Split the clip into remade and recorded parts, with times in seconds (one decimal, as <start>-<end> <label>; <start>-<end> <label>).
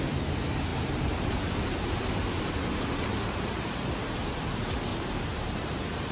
0.0-4.9 recorded; 4.9-6.1 remade